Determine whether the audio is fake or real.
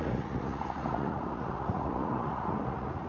fake